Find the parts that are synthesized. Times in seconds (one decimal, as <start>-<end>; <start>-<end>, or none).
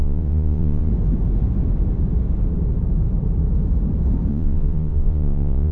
0.0-0.9; 4.3-5.7